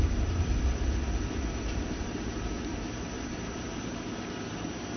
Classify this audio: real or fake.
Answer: fake